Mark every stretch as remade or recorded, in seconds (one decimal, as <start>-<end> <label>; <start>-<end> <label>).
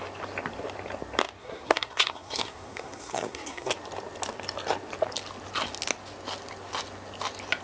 0.0-1.4 recorded; 1.4-3.7 remade; 3.7-7.6 recorded